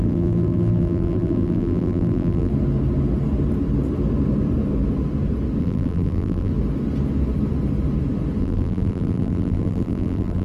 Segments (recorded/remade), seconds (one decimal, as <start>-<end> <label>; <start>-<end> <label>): 0.0-2.5 remade; 2.5-5.6 recorded; 5.6-6.5 remade; 6.5-8.4 recorded; 8.4-10.4 remade

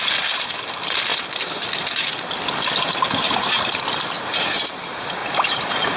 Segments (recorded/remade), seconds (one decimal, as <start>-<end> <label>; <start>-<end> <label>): 0.0-5.2 recorded; 5.2-6.0 remade

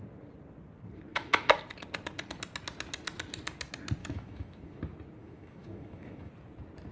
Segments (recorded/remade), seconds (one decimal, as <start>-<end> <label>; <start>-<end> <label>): 0.0-1.1 recorded; 1.1-1.6 remade; 1.6-4.0 recorded; 4.0-4.8 remade; 4.8-5.2 recorded; 5.2-6.3 remade; 6.3-6.9 recorded

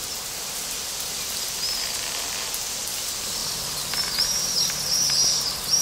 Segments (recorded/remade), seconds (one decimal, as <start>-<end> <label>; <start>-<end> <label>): 0.0-5.8 recorded

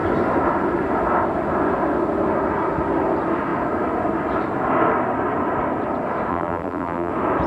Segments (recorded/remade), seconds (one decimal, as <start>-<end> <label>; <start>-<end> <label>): 0.0-6.3 recorded; 6.3-7.1 remade; 7.1-7.5 recorded

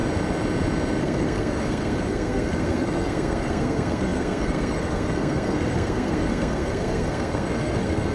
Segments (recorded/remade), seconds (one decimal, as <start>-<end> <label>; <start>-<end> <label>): 0.0-1.0 recorded; 1.0-8.1 remade

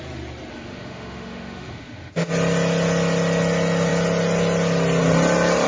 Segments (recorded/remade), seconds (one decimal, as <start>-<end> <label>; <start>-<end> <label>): 0.0-0.5 recorded; 0.5-2.3 remade; 2.3-5.7 recorded

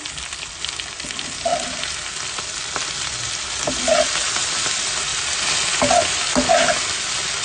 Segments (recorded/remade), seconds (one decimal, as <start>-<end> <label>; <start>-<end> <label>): 0.0-7.4 recorded